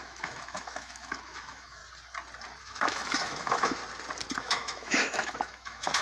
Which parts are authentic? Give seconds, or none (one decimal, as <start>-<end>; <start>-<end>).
1.8-2.6; 3.8-4.4